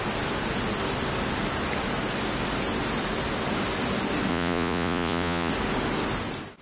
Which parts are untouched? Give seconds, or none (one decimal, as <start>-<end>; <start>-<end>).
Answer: 0.0-4.3; 5.5-6.6